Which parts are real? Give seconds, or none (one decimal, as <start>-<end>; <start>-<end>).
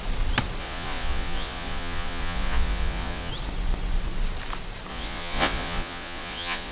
0.0-0.6; 3.3-4.9